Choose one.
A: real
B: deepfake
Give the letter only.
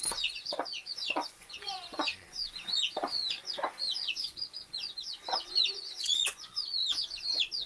B